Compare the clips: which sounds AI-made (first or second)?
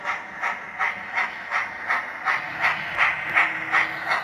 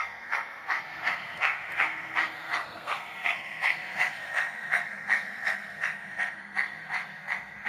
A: second